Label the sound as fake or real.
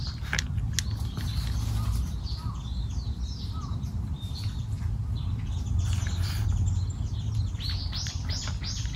real